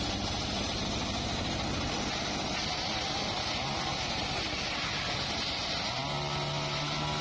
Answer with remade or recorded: recorded